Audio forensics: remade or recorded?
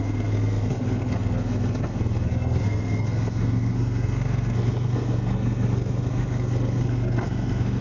remade